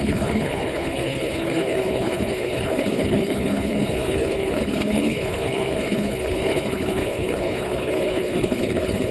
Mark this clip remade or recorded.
remade